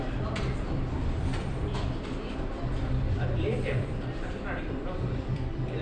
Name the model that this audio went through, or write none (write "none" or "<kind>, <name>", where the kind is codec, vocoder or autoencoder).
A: vocoder, BigVGAN v2